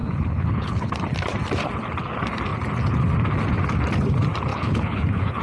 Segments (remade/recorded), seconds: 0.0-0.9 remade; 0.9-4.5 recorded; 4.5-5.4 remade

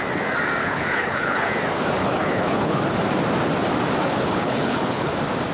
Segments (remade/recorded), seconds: 0.0-0.6 recorded; 0.6-1.5 remade; 1.5-2.0 recorded; 2.0-2.8 remade; 2.8-4.0 recorded; 4.0-5.1 remade; 5.1-5.5 recorded

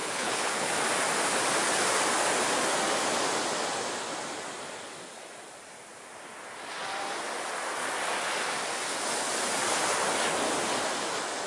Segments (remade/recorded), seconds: 0.0-0.7 remade; 0.7-11.5 recorded